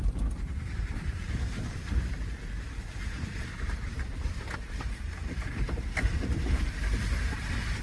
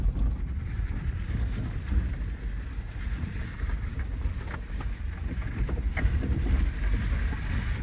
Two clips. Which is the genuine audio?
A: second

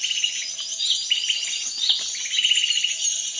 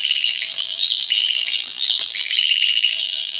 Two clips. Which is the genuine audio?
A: first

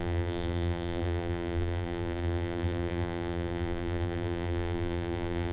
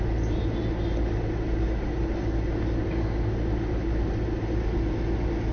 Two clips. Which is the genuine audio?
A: second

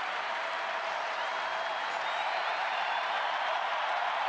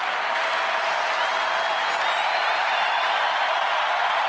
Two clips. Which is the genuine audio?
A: second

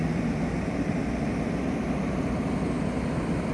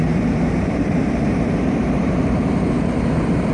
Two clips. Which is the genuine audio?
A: first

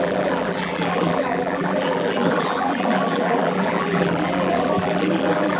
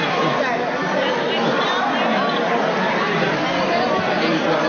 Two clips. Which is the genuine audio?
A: second